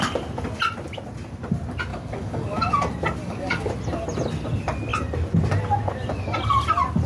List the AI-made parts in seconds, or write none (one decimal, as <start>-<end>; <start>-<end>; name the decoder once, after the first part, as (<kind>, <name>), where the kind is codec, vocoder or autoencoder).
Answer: 1.9-2.7 (codec, DAC); 3.2-3.7